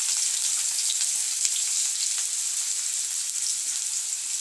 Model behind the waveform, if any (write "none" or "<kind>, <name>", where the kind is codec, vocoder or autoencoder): none